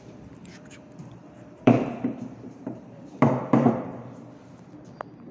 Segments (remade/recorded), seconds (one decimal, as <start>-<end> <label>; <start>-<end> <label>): 0.0-3.9 remade; 3.9-5.3 recorded

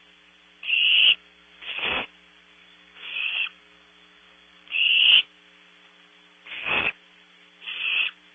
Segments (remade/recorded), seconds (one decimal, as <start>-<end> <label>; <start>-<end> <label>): 0.0-0.9 recorded; 0.9-2.0 remade; 2.0-2.6 recorded; 2.6-5.2 remade; 5.2-8.3 recorded

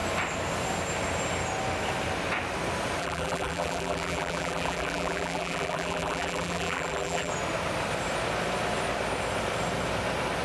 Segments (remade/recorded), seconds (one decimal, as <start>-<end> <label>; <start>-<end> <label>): 0.0-3.0 recorded; 3.0-7.3 remade; 7.3-10.4 recorded

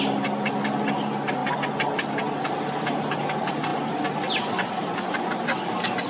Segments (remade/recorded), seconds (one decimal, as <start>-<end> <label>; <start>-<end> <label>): 0.0-6.1 recorded

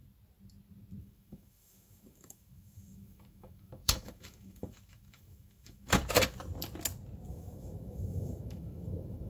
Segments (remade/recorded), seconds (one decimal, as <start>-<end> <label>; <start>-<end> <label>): 0.0-1.0 recorded; 1.0-6.0 remade; 6.0-7.3 recorded; 7.3-9.3 remade